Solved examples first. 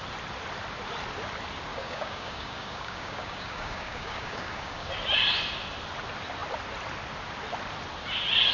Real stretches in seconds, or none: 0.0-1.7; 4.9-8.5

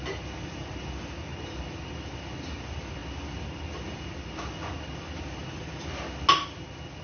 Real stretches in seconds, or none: 0.0-7.0

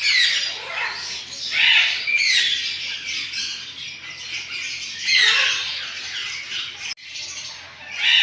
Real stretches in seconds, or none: 0.0-8.2

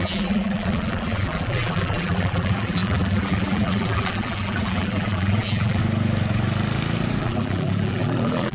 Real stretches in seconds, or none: 5.8-7.2